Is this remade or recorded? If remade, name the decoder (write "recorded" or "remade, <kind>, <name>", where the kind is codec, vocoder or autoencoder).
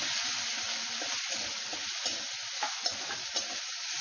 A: recorded